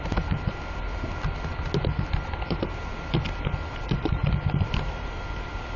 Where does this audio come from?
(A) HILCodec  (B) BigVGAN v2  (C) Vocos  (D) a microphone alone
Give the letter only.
D